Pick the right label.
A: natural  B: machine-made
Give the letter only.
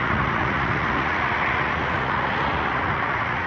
B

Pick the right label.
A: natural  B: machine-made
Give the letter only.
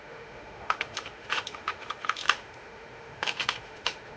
B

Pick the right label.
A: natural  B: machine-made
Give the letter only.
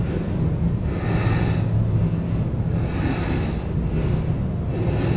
A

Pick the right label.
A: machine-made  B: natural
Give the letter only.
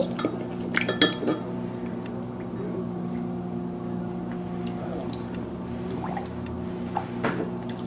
B